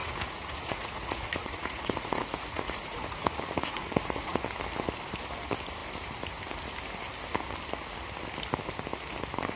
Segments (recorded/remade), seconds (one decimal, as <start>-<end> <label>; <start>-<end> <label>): 0.0-4.4 remade; 4.4-9.6 recorded